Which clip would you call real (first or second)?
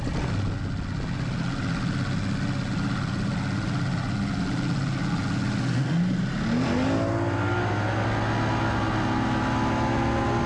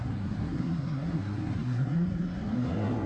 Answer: first